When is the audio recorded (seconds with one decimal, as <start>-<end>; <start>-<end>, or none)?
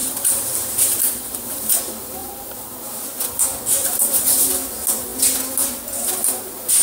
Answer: 1.8-3.8; 4.5-6.8